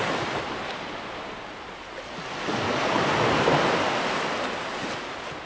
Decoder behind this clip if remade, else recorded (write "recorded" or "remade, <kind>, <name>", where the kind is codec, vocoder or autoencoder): recorded